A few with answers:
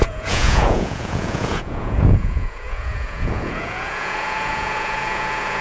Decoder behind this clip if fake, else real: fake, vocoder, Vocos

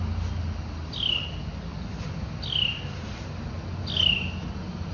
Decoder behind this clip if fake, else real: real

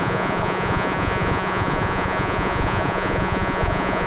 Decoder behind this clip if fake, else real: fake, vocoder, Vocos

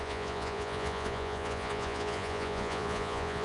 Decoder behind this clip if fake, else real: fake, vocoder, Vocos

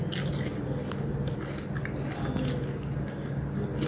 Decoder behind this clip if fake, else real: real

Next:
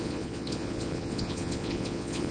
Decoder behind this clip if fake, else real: fake, vocoder, Vocos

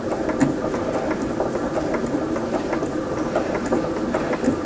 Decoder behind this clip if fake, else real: real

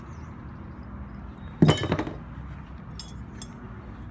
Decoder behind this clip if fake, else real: real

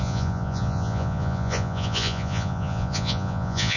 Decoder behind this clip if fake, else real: fake, vocoder, Vocos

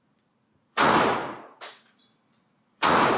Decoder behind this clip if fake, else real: fake, vocoder, Vocos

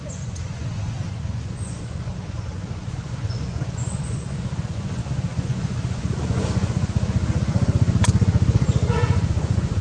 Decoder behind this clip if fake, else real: fake, vocoder, Vocos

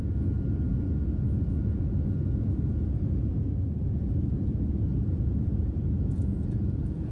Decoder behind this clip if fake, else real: fake, vocoder, Vocos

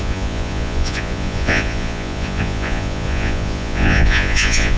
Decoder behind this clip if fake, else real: fake, vocoder, Vocos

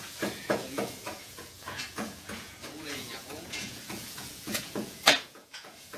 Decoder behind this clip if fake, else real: fake, vocoder, Vocos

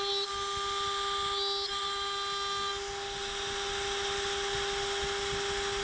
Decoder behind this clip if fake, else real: real